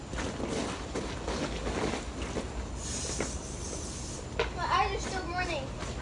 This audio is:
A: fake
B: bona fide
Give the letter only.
B